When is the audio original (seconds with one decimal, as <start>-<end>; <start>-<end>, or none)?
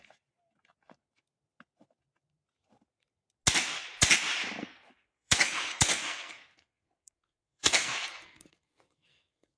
0.0-4.6